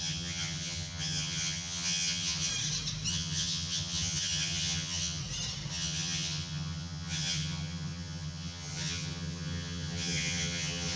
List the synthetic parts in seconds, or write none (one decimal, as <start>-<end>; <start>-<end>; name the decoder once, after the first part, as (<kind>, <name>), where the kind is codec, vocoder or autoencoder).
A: 0.0-2.5 (vocoder, HiFi-GAN); 3.1-5.2; 5.7-11.0